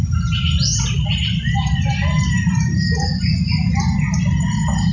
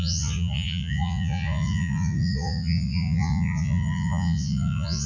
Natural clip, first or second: first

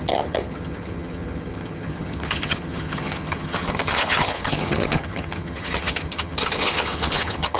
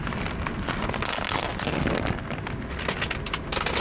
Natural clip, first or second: second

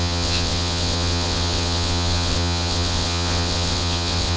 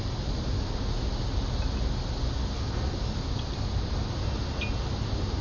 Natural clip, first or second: second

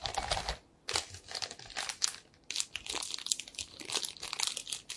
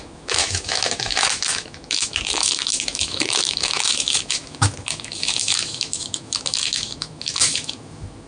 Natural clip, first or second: first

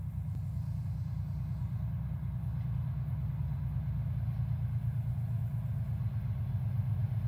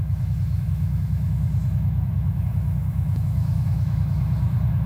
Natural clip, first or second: first